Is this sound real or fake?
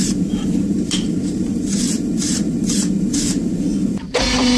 fake